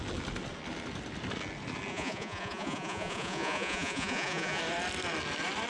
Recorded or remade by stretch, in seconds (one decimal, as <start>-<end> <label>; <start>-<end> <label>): 0.0-1.9 recorded; 1.9-4.6 remade; 4.6-5.7 recorded